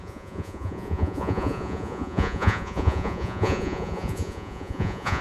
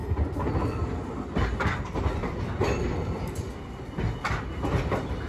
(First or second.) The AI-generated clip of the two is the first